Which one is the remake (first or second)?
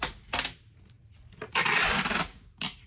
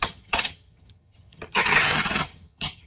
second